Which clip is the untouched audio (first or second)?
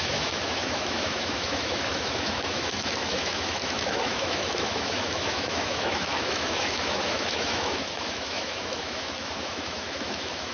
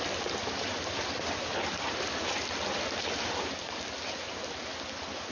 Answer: second